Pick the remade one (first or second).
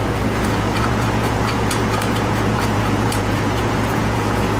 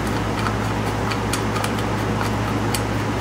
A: first